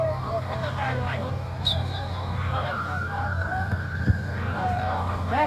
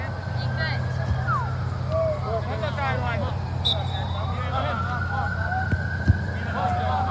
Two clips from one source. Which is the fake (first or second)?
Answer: first